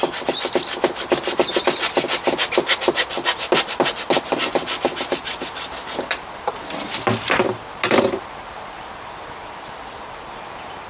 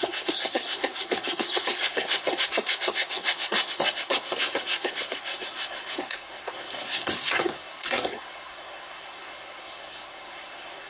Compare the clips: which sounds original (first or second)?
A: first